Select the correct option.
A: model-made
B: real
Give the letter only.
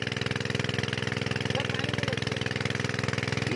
B